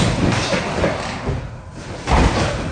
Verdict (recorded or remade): recorded